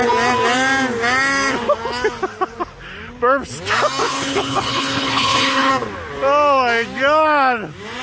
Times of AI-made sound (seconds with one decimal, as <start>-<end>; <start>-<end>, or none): 4.0-5.7